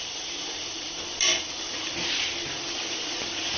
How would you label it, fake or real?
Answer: real